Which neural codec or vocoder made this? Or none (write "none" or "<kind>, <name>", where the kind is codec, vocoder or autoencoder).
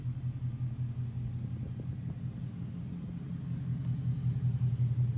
none